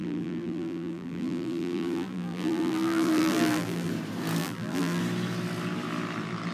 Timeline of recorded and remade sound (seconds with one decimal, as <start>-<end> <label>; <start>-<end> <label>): 0.0-3.9 remade; 3.9-4.4 recorded; 4.4-5.0 remade; 5.0-6.5 recorded